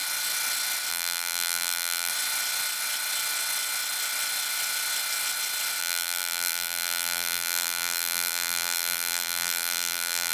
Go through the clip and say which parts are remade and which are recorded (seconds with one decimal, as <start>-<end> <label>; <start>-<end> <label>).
0.0-0.9 recorded; 0.9-2.1 remade; 2.1-5.8 recorded; 5.8-10.3 remade